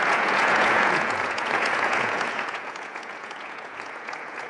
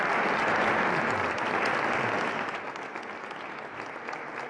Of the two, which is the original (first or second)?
second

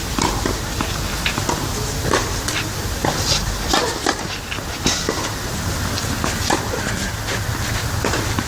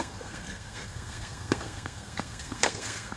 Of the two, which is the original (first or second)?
first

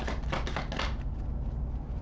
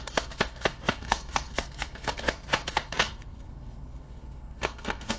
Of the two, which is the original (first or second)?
first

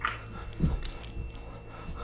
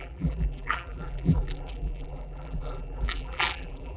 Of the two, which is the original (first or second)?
first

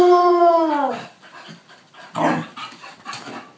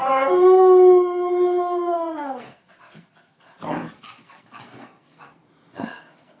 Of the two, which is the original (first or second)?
first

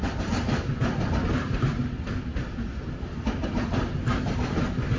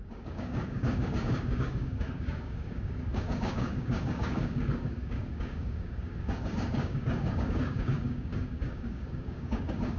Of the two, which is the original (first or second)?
first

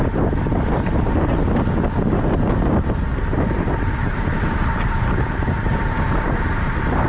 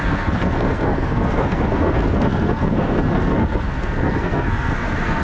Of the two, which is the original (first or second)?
first